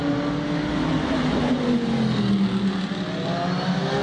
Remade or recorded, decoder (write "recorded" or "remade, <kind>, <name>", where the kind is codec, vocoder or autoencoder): recorded